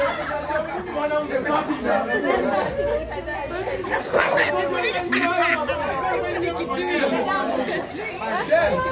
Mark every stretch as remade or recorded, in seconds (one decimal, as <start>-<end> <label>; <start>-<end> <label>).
0.0-4.0 recorded; 4.0-4.5 remade; 4.5-8.9 recorded